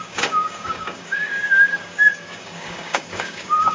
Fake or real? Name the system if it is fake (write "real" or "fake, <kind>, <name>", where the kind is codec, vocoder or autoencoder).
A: fake, codec, DAC